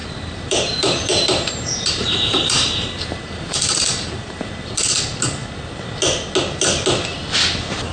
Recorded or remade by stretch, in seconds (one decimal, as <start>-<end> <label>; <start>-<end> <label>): 0.0-4.5 remade; 4.5-7.9 recorded